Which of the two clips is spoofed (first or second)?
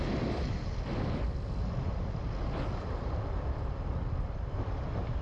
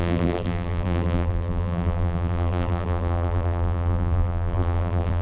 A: second